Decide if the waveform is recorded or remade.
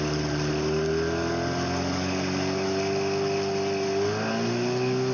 recorded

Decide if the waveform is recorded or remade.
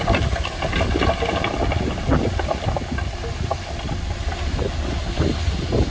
recorded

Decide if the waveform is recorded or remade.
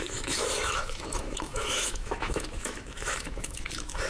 remade